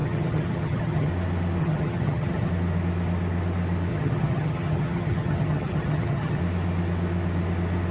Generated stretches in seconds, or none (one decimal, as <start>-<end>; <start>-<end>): 0.0-1.1; 1.6-2.5; 3.9-6.4